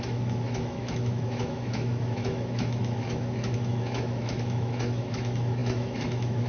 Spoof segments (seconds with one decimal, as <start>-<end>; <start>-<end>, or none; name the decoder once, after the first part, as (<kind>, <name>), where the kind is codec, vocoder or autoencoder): 0.0-6.5 (autoencoder, DAC-VAE)